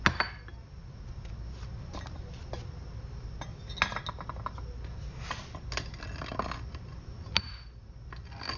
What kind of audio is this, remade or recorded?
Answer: recorded